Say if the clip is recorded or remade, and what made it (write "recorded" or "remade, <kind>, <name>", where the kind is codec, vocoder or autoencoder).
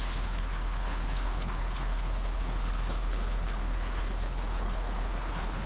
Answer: remade, codec, HILCodec